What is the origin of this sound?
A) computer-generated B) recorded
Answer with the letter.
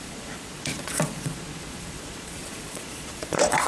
A